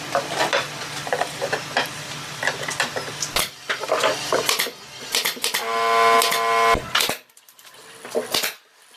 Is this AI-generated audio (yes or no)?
no